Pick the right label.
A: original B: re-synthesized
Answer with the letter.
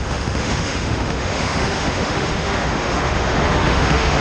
B